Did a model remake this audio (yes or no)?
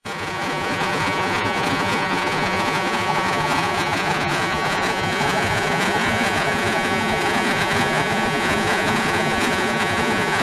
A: yes